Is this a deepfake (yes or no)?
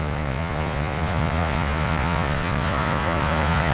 yes